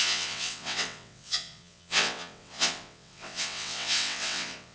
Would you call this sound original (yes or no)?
no